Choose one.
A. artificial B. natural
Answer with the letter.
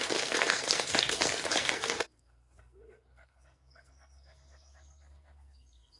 A